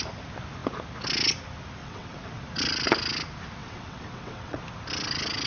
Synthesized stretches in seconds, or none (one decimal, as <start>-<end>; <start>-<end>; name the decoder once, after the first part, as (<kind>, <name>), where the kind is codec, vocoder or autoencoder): 1.8-2.4 (vocoder, WaveNeXt); 3.6-4.6